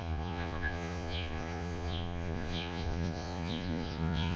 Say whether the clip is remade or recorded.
remade